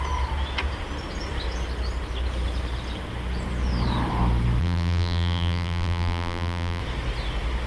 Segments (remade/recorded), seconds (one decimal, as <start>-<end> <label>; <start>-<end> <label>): 0.0-4.6 recorded; 4.6-6.8 remade; 6.8-7.7 recorded